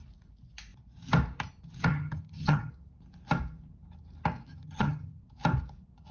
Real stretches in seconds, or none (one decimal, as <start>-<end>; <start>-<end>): 0.0-1.9; 2.7-4.5; 5.2-6.1